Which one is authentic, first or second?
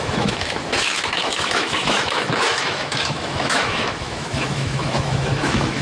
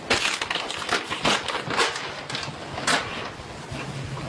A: second